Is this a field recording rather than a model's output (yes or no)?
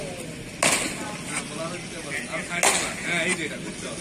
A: yes